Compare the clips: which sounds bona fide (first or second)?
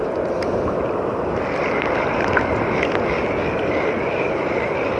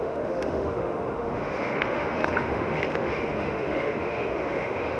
first